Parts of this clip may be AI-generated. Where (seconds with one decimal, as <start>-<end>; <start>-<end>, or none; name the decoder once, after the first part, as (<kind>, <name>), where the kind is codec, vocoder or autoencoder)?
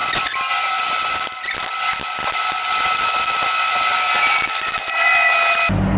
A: none